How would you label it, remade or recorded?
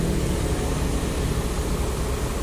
recorded